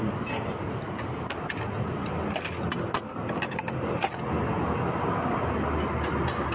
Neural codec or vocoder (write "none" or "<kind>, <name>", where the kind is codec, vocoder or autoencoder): none